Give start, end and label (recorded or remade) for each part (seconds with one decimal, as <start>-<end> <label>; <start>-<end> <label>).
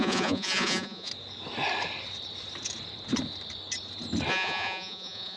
0.0-1.1 remade; 1.1-4.3 recorded; 4.3-5.4 remade